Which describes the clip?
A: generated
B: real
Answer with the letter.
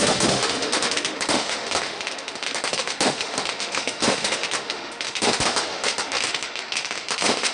A